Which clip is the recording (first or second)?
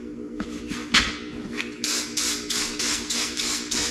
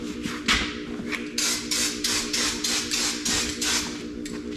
second